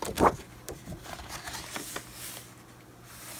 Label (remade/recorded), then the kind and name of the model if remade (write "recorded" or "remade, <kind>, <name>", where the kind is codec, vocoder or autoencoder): recorded